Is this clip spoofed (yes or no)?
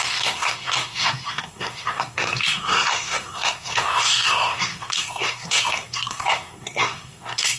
yes